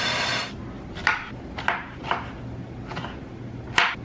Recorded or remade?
recorded